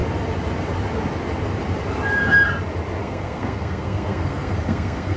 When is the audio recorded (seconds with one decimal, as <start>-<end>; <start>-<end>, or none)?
0.0-3.0